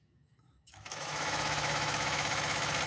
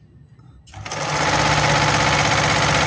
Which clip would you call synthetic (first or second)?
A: first